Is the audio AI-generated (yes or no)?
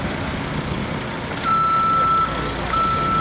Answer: no